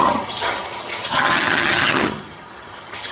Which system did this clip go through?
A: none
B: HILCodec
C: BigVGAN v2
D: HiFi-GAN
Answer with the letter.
D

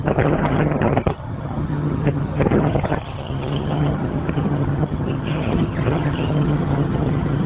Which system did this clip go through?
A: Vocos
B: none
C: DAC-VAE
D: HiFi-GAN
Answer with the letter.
D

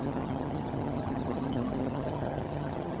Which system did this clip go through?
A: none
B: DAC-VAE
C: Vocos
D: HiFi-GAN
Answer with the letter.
D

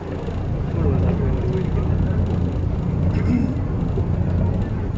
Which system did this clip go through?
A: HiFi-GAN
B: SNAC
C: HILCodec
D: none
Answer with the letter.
D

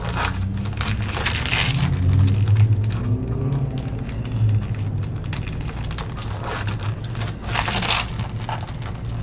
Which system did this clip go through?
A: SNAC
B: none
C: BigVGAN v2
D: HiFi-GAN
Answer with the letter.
B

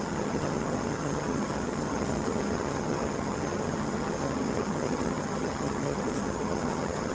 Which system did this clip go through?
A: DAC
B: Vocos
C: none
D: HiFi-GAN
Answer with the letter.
D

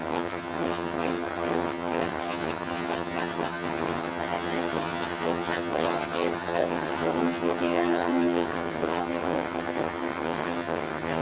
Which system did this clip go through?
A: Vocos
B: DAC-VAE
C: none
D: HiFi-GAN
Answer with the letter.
D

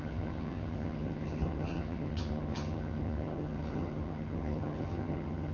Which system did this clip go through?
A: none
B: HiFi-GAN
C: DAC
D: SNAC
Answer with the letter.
B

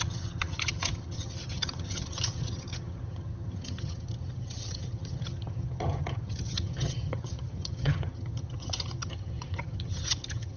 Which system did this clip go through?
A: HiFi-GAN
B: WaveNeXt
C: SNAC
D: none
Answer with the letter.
A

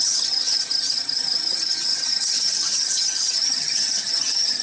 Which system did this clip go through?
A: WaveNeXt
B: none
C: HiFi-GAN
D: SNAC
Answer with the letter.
C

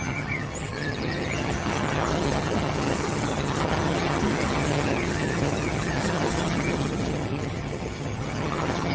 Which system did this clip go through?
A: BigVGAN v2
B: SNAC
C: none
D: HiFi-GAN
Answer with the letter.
D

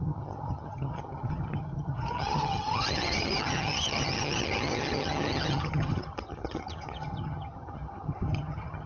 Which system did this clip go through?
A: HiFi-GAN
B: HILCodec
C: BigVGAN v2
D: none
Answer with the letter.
A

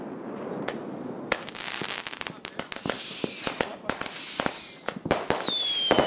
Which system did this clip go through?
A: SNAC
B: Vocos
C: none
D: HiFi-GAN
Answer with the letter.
C